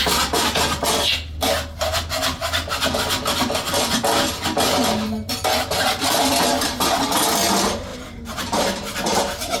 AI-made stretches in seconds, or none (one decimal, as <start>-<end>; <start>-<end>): 7.9-9.6